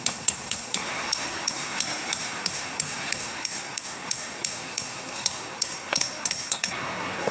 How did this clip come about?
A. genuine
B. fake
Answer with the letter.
B